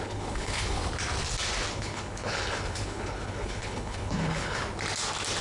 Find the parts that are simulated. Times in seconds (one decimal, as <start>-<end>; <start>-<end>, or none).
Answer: 0.0-0.8; 1.7-4.6